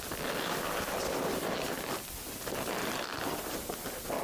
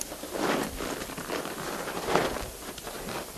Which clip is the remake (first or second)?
second